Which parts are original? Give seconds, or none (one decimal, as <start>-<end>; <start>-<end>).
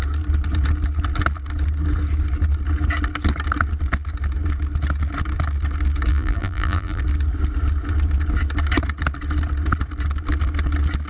0.0-6.1; 7.0-11.1